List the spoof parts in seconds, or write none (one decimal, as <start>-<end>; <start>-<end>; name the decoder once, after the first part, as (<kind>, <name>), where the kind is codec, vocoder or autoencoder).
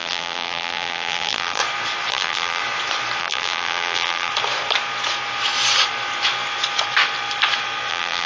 0.0-1.6 (vocoder, BigVGAN v2); 2.1-2.6; 3.2-4.3; 7.9-8.3